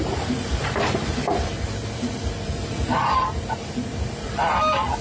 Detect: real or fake fake